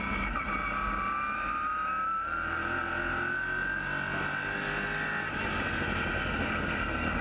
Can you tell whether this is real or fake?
real